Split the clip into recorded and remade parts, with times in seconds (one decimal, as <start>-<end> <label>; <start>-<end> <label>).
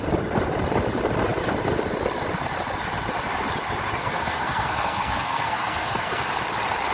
0.0-4.0 recorded; 4.0-6.2 remade; 6.2-6.9 recorded